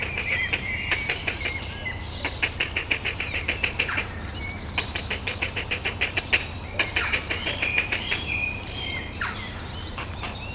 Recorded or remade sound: remade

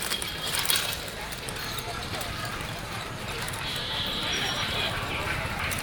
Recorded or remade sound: remade